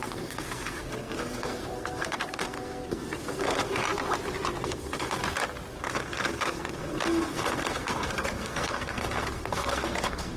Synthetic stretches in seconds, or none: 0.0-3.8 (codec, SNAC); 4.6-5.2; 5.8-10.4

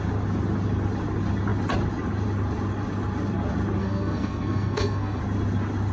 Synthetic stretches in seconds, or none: 3.8-5.2 (codec, SNAC)

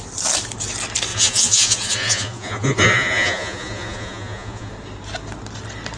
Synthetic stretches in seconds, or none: 1.1-4.7 (vocoder, Vocos)

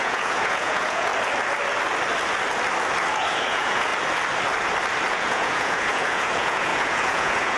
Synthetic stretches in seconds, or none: 0.0-1.1 (vocoder, Vocos); 3.1-3.9; 5.1-7.6

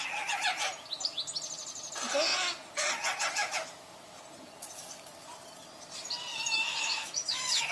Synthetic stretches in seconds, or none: 3.4-4.2 (autoencoder, DAC-VAE); 6.3-7.7